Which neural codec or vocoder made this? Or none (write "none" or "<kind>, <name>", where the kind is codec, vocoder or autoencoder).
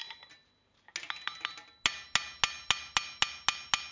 none